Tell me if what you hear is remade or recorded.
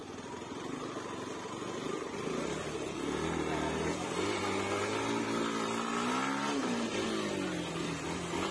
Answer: recorded